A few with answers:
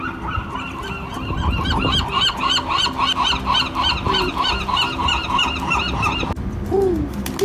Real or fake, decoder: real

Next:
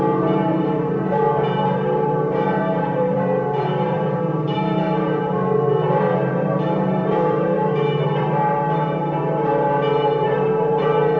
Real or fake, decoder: fake, vocoder, BigVGAN v2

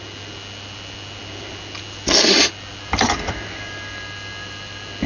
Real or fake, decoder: real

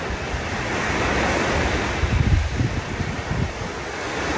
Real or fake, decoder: real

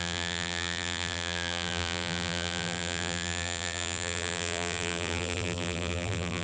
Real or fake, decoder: fake, vocoder, BigVGAN v2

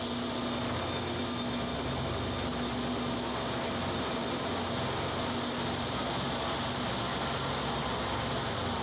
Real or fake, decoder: real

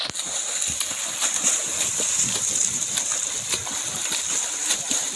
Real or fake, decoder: fake, vocoder, BigVGAN v2